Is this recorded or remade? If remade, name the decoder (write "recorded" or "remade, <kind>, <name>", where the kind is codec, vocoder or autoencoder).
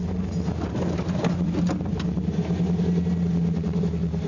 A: recorded